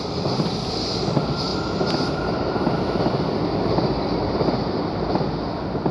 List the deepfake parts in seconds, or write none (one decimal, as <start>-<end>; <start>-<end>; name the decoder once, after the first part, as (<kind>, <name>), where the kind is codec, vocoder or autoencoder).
none